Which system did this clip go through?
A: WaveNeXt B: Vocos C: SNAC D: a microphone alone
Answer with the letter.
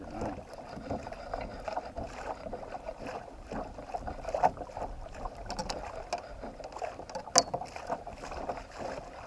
D